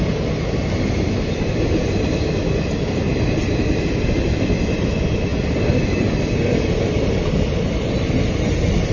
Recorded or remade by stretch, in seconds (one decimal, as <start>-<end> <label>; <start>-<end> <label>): 0.0-8.9 recorded